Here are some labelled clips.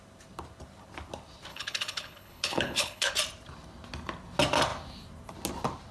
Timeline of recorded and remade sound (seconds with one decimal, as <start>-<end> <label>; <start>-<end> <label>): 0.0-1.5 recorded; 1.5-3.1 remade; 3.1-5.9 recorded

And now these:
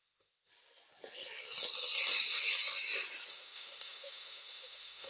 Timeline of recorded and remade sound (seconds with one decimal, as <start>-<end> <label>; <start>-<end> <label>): 0.0-0.5 remade; 0.5-3.3 recorded; 3.3-5.1 remade

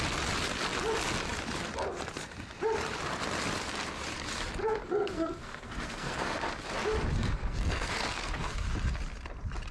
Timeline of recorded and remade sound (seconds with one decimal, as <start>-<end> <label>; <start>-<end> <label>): 0.0-4.6 recorded; 4.6-6.5 remade; 6.5-7.2 recorded; 7.2-8.6 remade; 8.6-9.7 recorded